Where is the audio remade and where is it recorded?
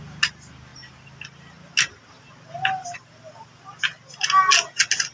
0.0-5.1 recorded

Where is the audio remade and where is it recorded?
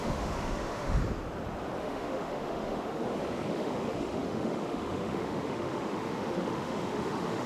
0.0-1.0 remade; 1.0-1.8 recorded; 1.8-3.0 remade; 3.0-3.5 recorded; 3.5-7.5 remade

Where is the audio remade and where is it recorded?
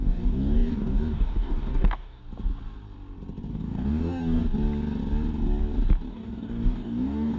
0.0-2.2 remade; 2.2-3.5 recorded; 3.5-4.4 remade; 4.4-6.1 recorded; 6.1-7.4 remade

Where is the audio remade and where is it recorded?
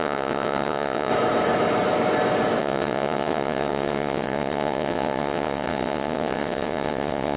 0.0-1.1 remade; 1.1-2.6 recorded; 2.6-7.4 remade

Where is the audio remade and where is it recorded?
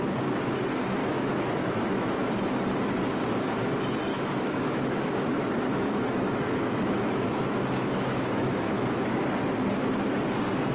0.0-1.0 recorded; 1.0-2.3 remade; 2.3-4.1 recorded; 4.1-9.1 remade; 9.1-10.7 recorded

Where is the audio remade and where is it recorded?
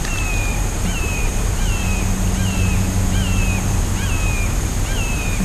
0.0-1.3 remade; 1.3-5.4 recorded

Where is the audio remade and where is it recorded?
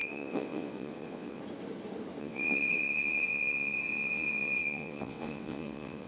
0.0-1.4 remade; 1.4-2.2 recorded; 2.2-6.1 remade